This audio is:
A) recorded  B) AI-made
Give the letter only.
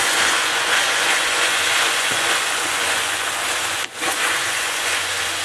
B